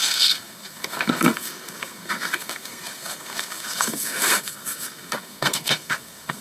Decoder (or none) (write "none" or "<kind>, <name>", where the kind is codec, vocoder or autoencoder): codec, SNAC